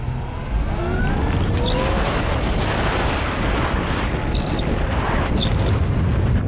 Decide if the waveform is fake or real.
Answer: real